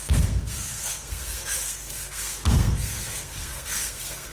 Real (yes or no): no